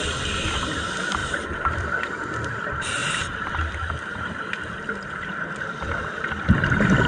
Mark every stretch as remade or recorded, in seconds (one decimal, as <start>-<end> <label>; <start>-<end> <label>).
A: 0.0-1.2 recorded; 1.2-2.0 remade; 2.0-3.0 recorded; 3.0-6.5 remade; 6.5-7.1 recorded